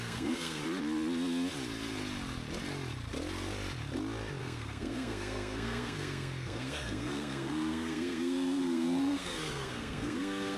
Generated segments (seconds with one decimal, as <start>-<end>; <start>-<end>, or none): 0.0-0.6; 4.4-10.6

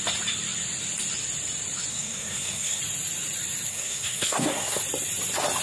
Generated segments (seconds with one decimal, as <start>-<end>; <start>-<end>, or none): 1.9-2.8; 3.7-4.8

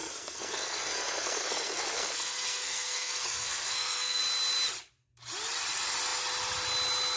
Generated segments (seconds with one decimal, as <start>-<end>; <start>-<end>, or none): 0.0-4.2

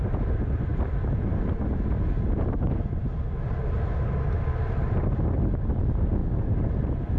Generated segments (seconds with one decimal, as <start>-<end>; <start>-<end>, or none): none